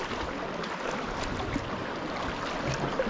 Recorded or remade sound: recorded